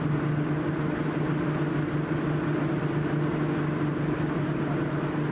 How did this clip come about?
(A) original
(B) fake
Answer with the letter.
A